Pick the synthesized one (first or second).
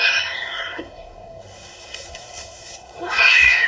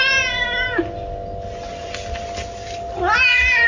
first